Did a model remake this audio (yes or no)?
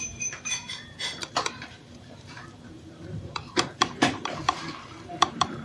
yes